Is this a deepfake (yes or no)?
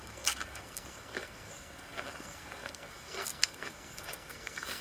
yes